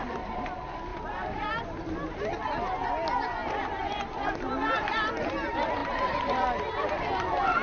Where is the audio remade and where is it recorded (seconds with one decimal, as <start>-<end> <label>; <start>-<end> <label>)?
0.0-5.8 recorded; 5.8-6.6 remade; 6.6-7.6 recorded